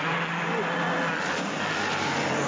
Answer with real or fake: real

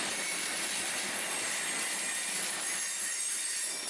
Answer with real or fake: real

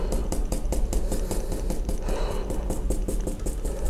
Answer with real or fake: real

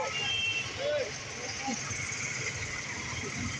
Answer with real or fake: real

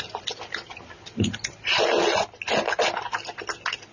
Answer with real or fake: real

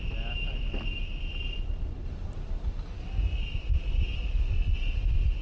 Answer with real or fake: real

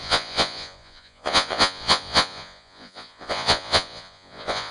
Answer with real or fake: fake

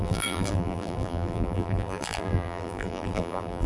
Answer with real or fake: fake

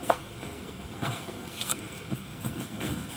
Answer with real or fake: fake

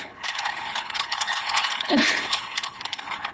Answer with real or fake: fake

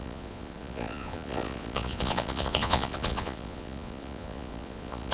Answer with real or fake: fake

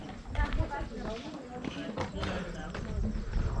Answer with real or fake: real